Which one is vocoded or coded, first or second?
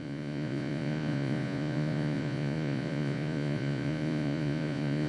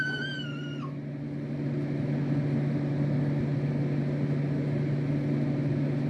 first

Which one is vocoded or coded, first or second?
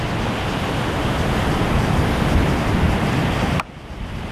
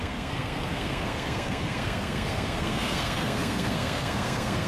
second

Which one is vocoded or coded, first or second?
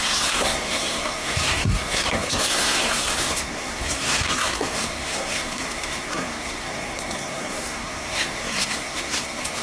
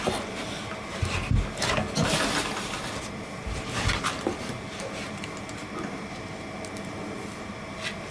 first